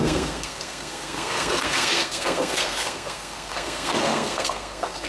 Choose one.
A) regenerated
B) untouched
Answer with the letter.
A